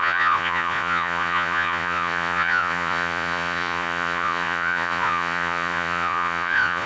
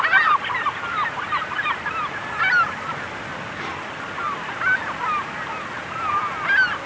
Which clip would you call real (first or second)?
second